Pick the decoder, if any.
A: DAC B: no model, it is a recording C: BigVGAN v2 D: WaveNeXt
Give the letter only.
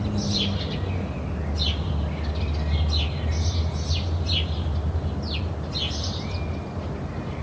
B